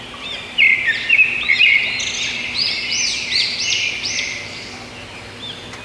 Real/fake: real